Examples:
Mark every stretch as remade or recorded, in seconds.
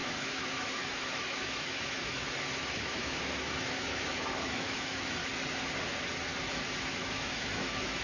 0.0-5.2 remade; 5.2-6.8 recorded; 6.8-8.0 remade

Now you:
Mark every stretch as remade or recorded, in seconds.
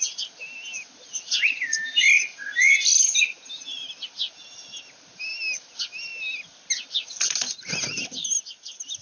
0.0-9.0 recorded